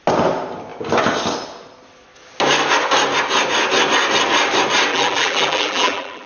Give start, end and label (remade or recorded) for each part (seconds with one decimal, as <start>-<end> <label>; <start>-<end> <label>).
0.0-4.9 recorded; 4.9-6.3 remade